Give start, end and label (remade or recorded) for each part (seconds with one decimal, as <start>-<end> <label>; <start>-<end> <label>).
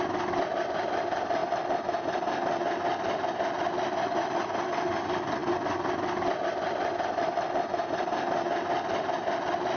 0.0-9.8 recorded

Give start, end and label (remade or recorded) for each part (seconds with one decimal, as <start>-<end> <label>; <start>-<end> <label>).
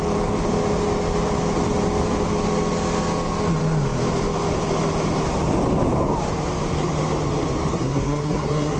0.0-7.7 recorded; 7.7-8.8 remade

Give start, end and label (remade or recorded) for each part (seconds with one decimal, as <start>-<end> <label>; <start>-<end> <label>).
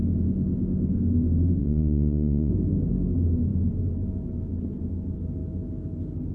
0.0-1.6 recorded; 1.6-2.5 remade; 2.5-6.3 recorded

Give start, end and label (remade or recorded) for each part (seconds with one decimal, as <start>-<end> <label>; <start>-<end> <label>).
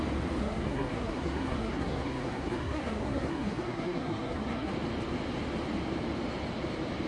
0.0-0.4 recorded; 0.4-4.7 remade; 4.7-7.1 recorded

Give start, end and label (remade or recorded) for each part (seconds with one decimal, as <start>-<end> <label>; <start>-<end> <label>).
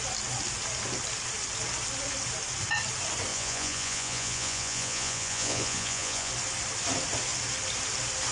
0.0-3.3 recorded; 3.3-6.3 remade; 6.3-8.3 recorded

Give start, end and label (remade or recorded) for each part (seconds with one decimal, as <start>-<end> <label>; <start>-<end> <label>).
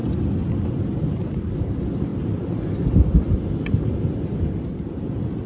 0.0-5.5 recorded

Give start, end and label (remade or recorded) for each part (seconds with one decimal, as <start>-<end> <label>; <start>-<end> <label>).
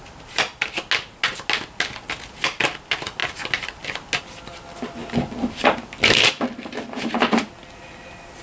0.0-8.4 recorded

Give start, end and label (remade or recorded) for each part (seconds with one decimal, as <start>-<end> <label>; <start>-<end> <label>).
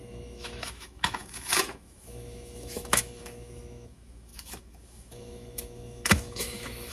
0.0-6.9 remade